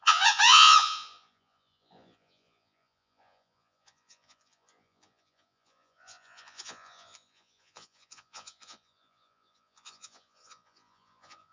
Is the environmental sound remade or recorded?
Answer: remade